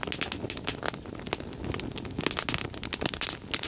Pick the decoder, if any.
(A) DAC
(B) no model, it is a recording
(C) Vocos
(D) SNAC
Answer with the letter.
B